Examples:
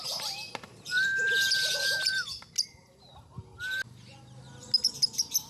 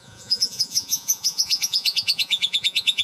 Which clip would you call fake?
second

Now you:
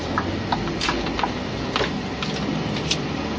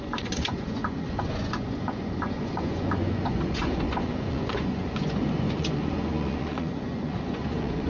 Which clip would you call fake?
second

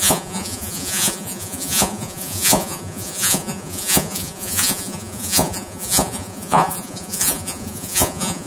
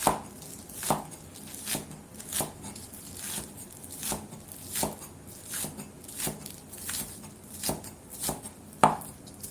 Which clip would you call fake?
first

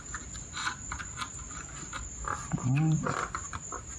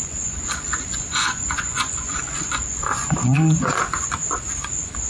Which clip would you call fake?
second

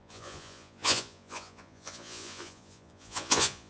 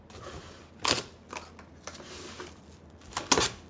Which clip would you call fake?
first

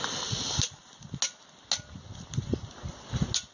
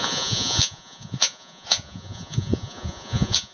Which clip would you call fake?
second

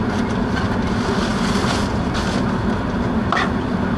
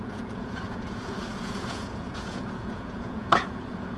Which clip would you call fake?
second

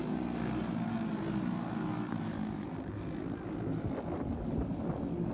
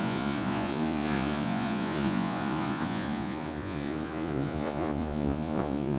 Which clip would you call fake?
second